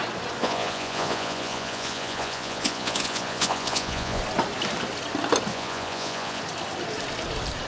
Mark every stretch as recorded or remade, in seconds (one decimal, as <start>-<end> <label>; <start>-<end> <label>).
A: 0.0-0.4 recorded; 0.4-4.2 remade; 4.2-5.5 recorded; 5.5-6.4 remade; 6.4-7.7 recorded